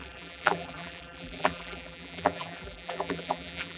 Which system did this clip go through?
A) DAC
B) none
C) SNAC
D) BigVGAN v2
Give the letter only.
D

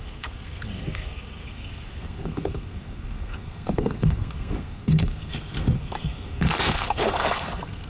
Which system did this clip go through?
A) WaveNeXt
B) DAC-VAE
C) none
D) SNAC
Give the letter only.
D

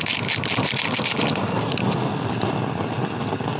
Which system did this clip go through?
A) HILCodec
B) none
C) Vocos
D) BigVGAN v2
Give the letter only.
B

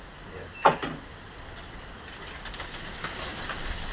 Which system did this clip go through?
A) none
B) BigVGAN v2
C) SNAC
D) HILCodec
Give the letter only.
A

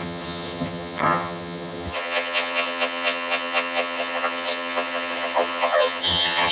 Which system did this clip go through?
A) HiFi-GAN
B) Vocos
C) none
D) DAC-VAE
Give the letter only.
A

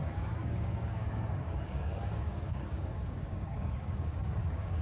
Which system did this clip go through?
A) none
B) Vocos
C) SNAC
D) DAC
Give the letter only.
D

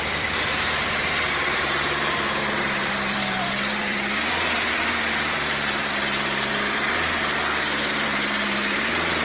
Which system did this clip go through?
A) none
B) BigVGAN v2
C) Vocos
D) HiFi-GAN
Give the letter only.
B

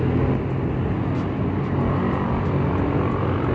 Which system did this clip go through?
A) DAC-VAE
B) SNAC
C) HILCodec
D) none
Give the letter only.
D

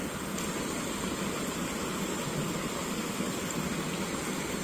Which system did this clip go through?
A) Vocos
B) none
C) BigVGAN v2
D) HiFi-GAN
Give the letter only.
B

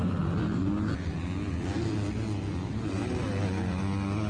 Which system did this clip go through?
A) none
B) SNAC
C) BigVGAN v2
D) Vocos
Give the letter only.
A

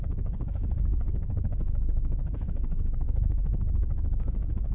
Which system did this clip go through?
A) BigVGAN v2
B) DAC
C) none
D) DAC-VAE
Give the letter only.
B